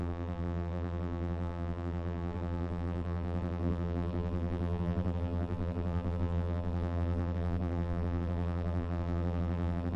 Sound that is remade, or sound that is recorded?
remade